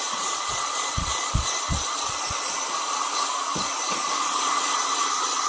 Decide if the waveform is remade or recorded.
remade